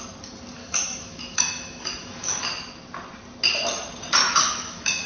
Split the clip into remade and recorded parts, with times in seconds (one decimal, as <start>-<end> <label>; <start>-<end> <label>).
0.0-0.6 recorded; 0.6-2.4 remade; 2.4-4.2 recorded; 4.2-5.1 remade